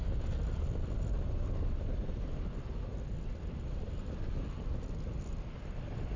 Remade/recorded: recorded